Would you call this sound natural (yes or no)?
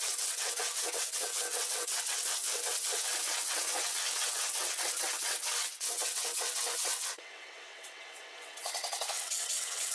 no